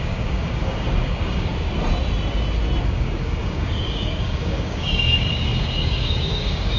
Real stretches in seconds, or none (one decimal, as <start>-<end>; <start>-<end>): 1.5-2.8